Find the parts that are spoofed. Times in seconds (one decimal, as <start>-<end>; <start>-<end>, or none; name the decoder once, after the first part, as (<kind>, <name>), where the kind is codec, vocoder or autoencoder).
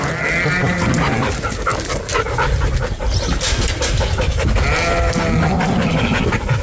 none